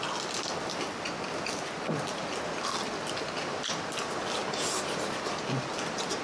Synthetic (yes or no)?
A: no